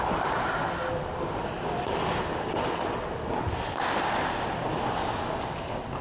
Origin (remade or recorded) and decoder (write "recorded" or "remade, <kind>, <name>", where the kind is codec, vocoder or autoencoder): recorded